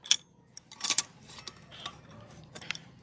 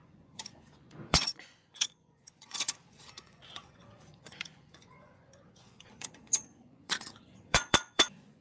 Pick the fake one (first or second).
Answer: second